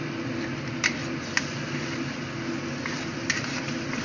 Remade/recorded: recorded